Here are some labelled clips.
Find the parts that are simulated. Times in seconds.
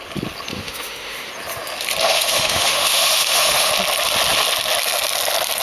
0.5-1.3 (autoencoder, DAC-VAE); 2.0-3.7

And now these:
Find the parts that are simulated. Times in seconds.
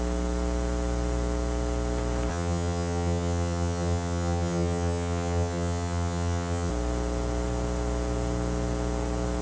2.3-6.7 (vocoder, HiFi-GAN)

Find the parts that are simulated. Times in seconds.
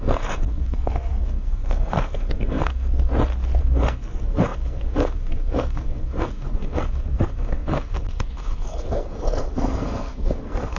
0.0-3.1 (codec, SNAC); 3.6-10.8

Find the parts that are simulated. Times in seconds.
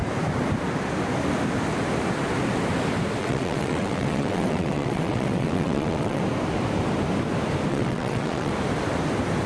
3.2-6.2 (vocoder, WaveNeXt); 7.7-8.5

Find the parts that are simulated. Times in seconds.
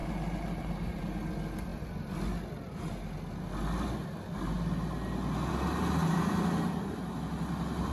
0.0-1.0 (vocoder, BigVGAN v2); 6.0-7.2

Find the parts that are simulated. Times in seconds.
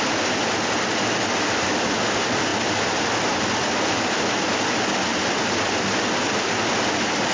none